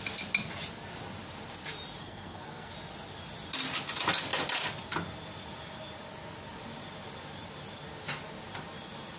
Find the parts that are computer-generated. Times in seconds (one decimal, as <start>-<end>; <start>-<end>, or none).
2.0-2.7